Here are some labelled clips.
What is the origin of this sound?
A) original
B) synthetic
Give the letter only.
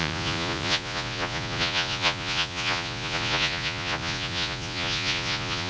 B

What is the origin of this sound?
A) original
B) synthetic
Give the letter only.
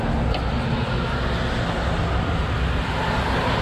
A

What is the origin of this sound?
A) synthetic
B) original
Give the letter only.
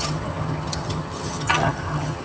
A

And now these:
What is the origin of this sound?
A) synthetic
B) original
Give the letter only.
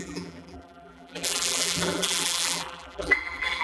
A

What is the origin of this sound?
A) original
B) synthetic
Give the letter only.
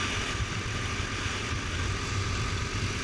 A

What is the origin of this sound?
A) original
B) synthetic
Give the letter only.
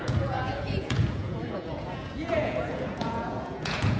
B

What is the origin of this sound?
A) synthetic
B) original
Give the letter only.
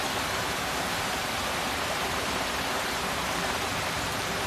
A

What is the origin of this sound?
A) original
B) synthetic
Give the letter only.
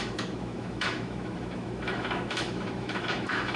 B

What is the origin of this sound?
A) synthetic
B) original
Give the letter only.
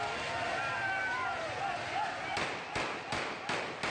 B